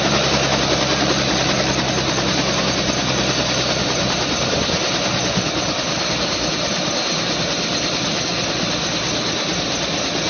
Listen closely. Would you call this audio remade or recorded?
recorded